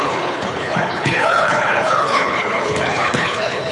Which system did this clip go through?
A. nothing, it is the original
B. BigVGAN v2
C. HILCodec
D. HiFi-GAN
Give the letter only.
C